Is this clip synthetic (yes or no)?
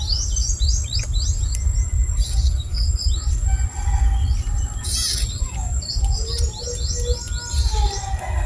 no